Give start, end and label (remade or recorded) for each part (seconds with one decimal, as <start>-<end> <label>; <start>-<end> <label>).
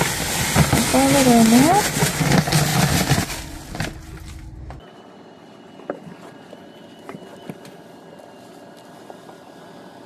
0.0-10.1 recorded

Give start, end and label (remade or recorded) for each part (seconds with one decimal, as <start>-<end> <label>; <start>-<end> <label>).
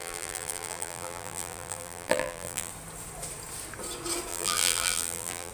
0.0-2.7 remade; 2.7-4.3 recorded; 4.3-5.5 remade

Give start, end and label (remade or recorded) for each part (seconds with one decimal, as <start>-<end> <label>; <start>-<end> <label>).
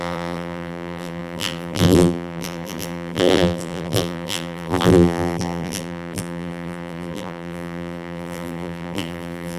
0.0-9.6 remade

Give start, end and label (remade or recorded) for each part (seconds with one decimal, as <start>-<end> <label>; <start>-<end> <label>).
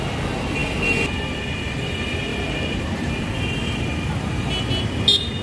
0.0-2.3 recorded; 2.3-3.1 remade; 3.1-5.4 recorded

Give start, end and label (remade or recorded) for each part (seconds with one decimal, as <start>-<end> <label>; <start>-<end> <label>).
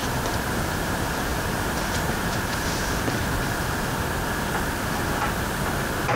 0.0-6.2 recorded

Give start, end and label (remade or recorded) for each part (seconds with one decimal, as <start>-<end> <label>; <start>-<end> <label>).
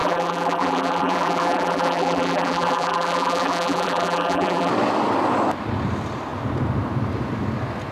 0.0-4.7 remade; 4.7-7.9 recorded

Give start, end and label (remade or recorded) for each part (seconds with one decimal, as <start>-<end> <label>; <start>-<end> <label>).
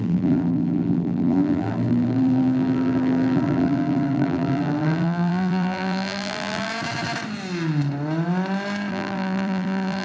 0.0-6.7 remade; 6.7-8.9 recorded; 8.9-10.0 remade